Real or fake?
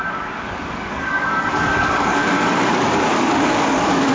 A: fake